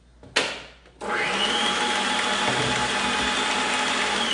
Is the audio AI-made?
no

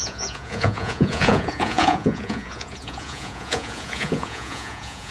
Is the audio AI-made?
yes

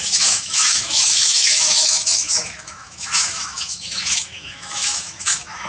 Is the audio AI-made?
yes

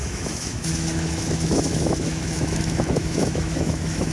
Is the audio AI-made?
yes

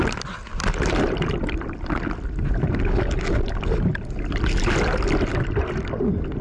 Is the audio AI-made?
no